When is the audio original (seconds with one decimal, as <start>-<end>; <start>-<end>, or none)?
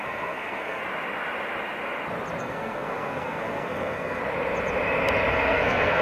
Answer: 0.8-2.4; 4.2-5.3